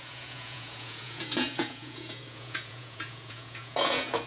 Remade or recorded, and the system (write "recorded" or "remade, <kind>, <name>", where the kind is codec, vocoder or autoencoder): remade, vocoder, Vocos